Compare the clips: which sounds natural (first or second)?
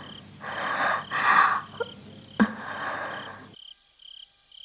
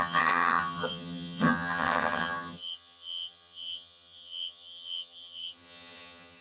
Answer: first